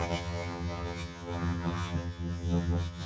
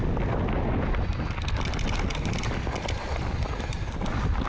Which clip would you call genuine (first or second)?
second